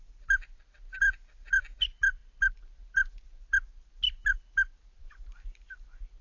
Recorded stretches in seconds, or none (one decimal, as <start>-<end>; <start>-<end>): 0.0-6.2